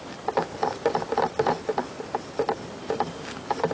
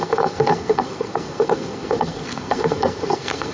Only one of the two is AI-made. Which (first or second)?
second